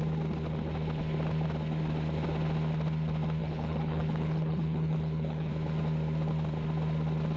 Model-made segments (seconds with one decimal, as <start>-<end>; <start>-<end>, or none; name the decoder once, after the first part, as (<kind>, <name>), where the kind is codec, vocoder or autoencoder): 3.4-5.5 (codec, HILCodec)

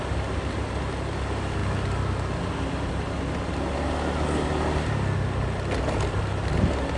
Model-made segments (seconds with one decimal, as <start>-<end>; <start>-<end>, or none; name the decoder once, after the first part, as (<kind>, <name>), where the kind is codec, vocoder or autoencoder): none

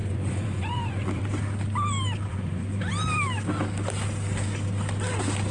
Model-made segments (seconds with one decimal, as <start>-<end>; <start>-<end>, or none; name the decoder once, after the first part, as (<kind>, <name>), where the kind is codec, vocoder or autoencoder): 0.0-1.2 (vocoder, Vocos); 2.3-2.9

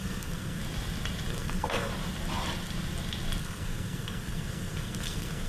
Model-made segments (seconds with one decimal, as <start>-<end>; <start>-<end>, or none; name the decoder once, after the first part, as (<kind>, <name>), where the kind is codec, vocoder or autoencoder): 0.0-0.6 (codec, SNAC); 1.3-1.9; 3.4-5.5

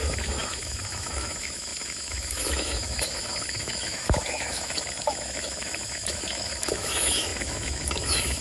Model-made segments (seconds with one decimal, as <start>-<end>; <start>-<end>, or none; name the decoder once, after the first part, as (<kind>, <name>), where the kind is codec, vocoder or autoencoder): 0.0-8.4 (autoencoder, DAC-VAE)

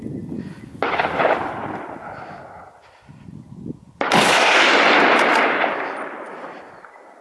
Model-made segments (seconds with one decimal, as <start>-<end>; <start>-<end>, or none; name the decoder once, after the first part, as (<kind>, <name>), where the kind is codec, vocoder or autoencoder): none

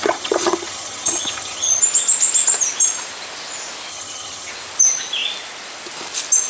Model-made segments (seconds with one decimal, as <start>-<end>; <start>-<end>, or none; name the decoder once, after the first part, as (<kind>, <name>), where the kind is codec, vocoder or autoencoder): 0.0-1.8 (vocoder, HiFi-GAN); 3.9-4.5

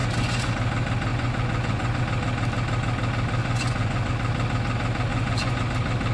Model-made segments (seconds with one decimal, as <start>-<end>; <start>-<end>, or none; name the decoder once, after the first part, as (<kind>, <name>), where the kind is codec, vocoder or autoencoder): 0.0-0.5 (vocoder, Vocos); 1.1-2.0; 3.4-4.1; 5.1-5.6